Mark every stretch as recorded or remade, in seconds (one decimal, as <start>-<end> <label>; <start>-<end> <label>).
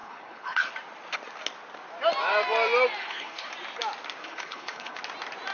0.0-0.7 remade; 0.7-3.0 recorded; 3.0-3.5 remade; 3.5-4.2 recorded; 4.2-5.0 remade; 5.0-5.5 recorded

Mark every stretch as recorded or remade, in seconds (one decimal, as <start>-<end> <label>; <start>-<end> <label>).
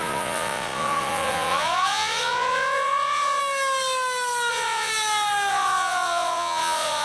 0.0-3.4 remade; 3.4-4.5 recorded; 4.5-4.9 remade; 4.9-5.5 recorded; 5.5-7.0 remade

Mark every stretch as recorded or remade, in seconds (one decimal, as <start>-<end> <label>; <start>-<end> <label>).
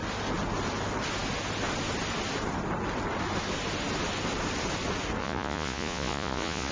0.0-5.2 recorded; 5.2-6.7 remade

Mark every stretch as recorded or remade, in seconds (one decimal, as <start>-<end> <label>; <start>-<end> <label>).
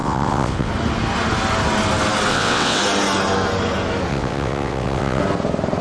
0.0-0.7 remade; 0.7-2.3 recorded; 2.3-2.8 remade; 2.8-4.1 recorded; 4.1-5.2 remade; 5.2-5.8 recorded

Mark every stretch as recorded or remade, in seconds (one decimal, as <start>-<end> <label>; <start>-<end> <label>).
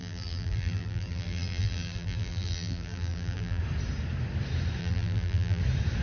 0.0-3.6 remade; 3.6-4.8 recorded; 4.8-5.6 remade; 5.6-6.0 recorded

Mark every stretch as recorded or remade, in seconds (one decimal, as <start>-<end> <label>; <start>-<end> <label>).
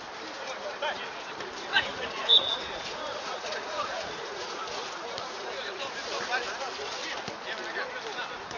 0.0-1.7 recorded; 1.7-5.8 remade; 5.8-8.6 recorded